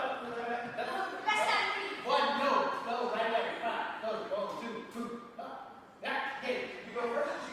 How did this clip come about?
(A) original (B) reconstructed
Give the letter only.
B